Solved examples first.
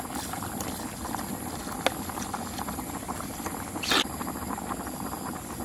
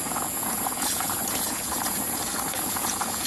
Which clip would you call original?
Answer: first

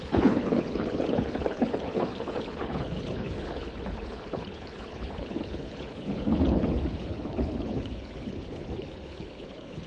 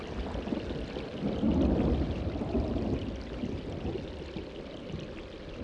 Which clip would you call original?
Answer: second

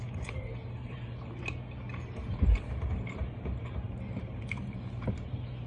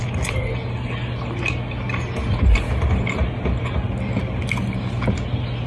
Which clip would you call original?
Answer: second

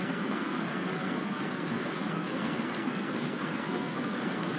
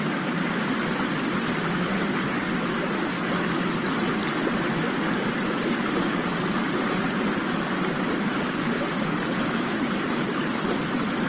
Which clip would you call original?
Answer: second